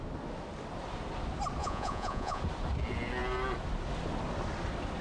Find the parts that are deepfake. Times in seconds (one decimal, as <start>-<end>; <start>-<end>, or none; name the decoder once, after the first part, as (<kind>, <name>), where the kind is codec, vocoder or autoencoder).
1.6-2.4 (vocoder, Vocos)